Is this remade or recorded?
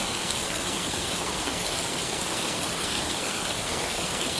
remade